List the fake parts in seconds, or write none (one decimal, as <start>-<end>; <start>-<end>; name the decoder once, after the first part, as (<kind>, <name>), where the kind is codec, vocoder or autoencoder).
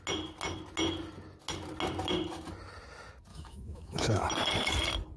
3.3-4.3 (autoencoder, DAC-VAE)